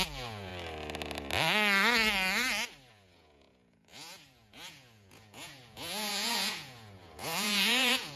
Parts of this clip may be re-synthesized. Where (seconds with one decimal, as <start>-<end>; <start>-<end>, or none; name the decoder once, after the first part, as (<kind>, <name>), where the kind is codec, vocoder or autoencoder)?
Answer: 0.0-0.5 (vocoder, Vocos); 2.9-8.2